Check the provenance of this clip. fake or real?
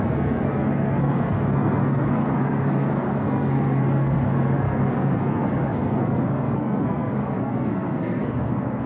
fake